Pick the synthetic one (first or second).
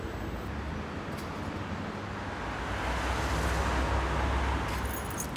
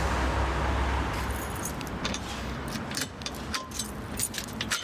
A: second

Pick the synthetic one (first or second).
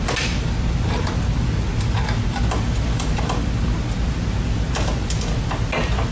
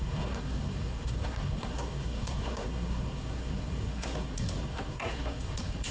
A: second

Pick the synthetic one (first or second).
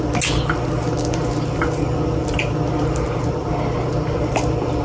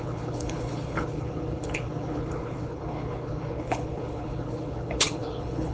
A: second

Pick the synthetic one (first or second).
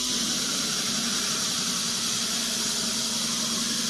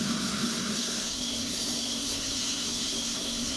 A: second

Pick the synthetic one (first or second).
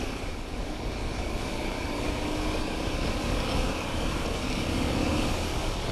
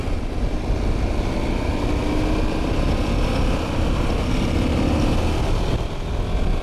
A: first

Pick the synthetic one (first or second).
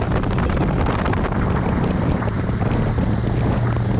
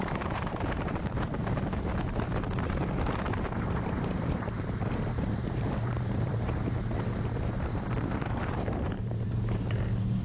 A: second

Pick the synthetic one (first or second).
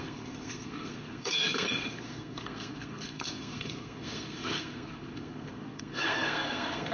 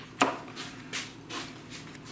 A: first